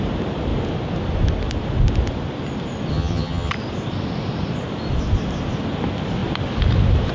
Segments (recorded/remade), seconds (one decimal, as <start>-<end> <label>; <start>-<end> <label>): 0.0-2.9 recorded; 2.9-3.5 remade; 3.5-7.1 recorded